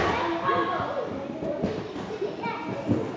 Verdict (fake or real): real